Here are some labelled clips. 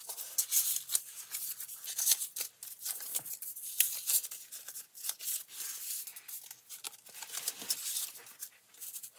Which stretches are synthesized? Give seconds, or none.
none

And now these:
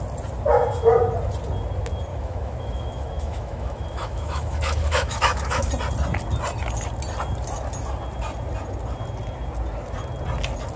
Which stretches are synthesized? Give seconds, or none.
2.1-5.7

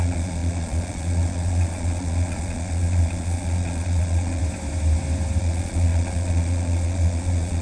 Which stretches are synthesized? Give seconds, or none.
0.0-4.4; 5.4-7.6

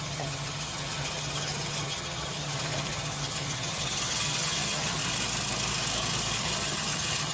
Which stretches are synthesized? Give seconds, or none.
0.0-5.0; 6.4-7.3